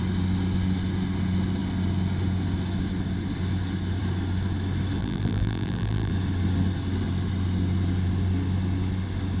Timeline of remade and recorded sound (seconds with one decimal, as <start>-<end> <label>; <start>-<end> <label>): 0.0-5.0 recorded; 5.0-6.1 remade; 6.1-9.4 recorded